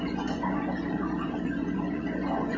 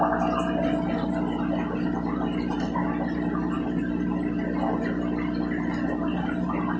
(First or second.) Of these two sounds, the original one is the second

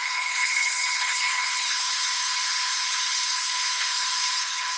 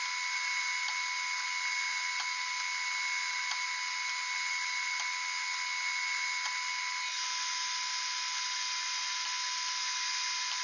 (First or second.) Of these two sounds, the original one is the second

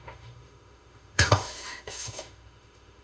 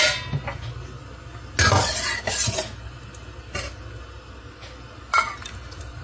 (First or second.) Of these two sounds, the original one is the second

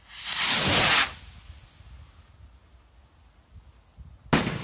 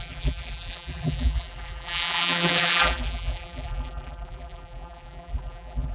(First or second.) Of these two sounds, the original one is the first